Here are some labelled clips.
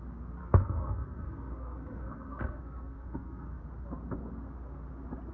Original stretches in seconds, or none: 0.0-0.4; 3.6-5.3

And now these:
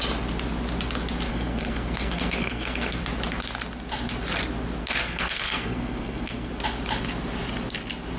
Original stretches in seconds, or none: 0.0-1.3; 3.0-4.8; 6.5-8.2